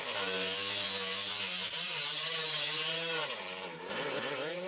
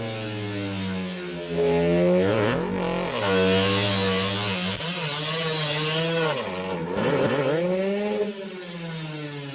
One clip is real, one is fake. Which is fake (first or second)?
first